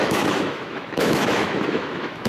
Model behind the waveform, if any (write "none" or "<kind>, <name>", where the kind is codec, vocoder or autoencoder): autoencoder, DAC-VAE